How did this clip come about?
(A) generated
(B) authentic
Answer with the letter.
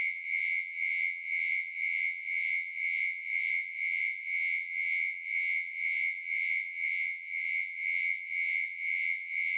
A